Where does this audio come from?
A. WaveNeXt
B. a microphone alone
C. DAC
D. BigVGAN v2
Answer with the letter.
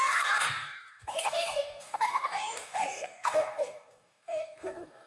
C